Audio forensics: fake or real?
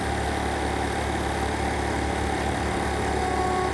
real